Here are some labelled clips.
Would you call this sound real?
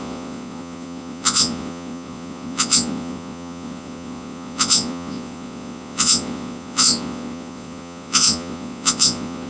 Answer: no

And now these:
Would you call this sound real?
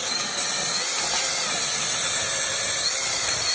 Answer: yes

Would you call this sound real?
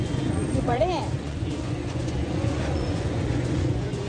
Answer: no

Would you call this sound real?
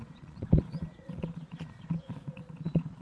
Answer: no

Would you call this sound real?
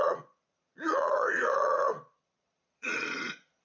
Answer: no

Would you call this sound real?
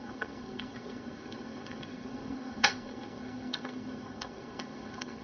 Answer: no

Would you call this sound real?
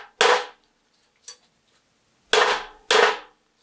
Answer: yes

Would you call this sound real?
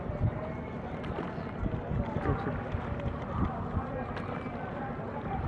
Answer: yes